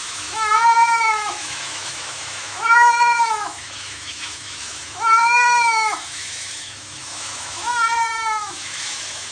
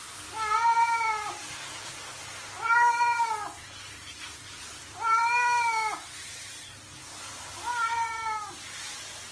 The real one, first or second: second